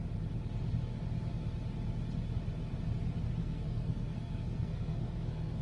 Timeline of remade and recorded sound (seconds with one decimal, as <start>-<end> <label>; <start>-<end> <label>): 0.0-3.4 recorded; 3.4-5.6 remade